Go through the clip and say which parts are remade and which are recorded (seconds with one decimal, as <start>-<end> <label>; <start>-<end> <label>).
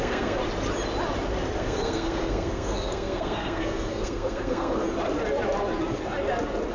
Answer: 0.0-0.4 remade; 0.4-1.6 recorded; 1.6-4.8 remade; 4.8-6.7 recorded